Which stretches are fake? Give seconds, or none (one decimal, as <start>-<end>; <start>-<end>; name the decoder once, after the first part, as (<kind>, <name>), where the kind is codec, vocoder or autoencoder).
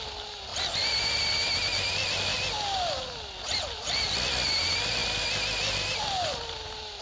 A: none